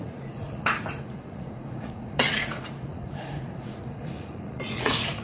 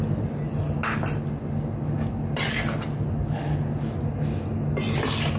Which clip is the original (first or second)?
second